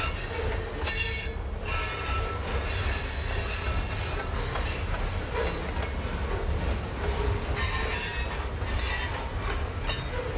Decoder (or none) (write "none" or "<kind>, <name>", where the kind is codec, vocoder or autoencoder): none